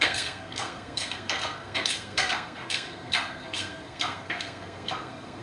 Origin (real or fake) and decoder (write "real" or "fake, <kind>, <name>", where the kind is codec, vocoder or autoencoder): fake, codec, SNAC